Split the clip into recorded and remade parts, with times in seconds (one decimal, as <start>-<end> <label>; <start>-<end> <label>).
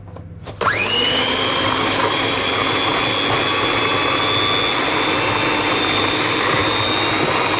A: 0.0-2.9 remade; 2.9-5.6 recorded; 5.6-6.6 remade; 6.6-7.6 recorded